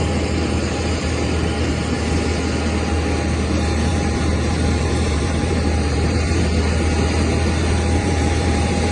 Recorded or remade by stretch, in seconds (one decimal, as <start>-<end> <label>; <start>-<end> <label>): 0.0-3.9 recorded; 3.9-6.4 remade; 6.4-8.0 recorded; 8.0-8.9 remade